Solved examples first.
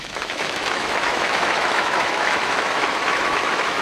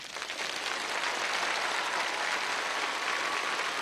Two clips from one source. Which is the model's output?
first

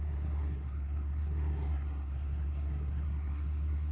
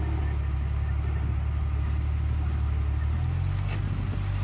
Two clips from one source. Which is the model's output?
first